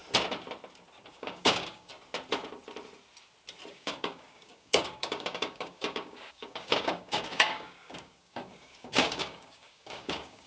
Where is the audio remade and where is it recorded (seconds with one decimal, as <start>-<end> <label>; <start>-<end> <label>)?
0.0-1.1 recorded; 1.1-1.9 remade; 1.9-3.7 recorded; 3.7-10.5 remade